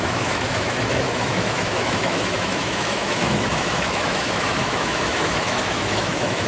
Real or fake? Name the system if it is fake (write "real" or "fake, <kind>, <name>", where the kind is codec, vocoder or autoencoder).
fake, autoencoder, DAC-VAE